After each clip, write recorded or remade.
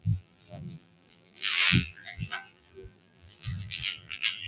remade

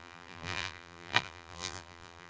remade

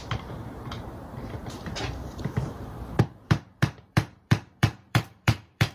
remade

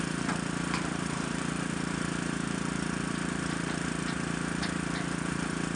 remade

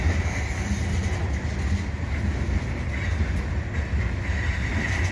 recorded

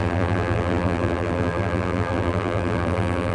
remade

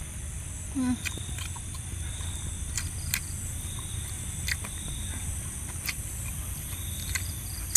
recorded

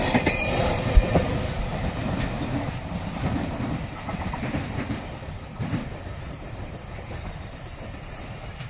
remade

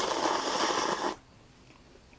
recorded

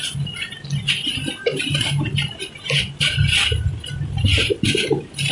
recorded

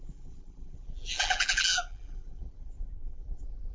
remade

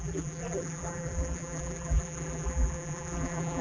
remade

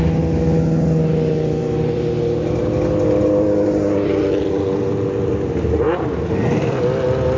recorded